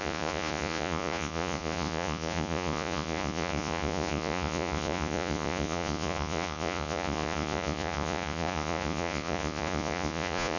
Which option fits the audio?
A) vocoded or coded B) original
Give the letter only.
A